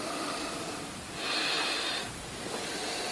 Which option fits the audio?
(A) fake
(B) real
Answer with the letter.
B